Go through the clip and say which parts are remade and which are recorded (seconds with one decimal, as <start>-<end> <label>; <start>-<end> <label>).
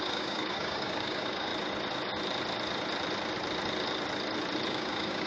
0.0-1.5 remade; 1.5-4.7 recorded; 4.7-5.3 remade